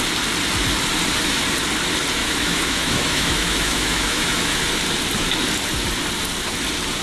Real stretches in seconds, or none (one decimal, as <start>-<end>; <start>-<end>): 0.0-2.2; 4.6-7.0